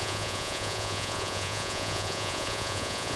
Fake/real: fake